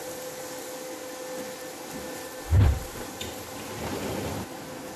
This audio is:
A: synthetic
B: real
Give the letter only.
B